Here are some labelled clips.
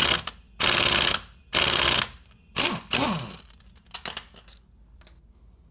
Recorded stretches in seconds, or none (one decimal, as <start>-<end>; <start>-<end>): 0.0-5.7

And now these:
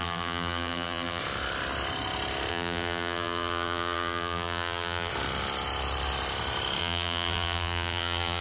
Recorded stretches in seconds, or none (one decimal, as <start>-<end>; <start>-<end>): 1.2-2.5; 5.1-6.8

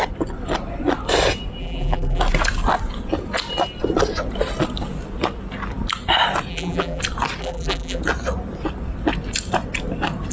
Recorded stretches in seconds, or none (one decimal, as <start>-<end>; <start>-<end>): 0.0-1.6; 2.2-6.5; 7.0-7.4; 8.0-10.3

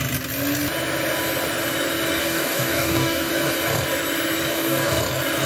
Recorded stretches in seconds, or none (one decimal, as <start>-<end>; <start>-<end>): 0.0-2.2; 3.3-4.5; 5.0-5.5

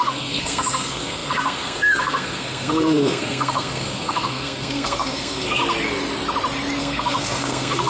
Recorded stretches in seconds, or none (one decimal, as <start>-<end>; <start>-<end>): 5.6-6.8